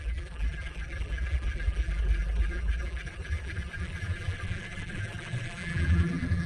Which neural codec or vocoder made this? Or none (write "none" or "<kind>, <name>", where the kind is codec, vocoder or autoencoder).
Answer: vocoder, BigVGAN v2